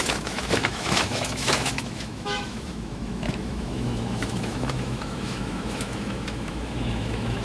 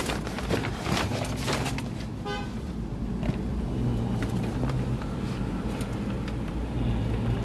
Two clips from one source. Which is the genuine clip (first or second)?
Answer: second